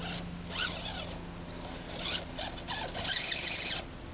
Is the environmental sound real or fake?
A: real